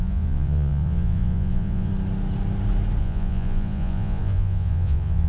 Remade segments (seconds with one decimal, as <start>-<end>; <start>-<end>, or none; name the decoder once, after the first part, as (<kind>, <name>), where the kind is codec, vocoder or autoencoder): 0.0-1.9 (vocoder, Vocos); 3.0-5.3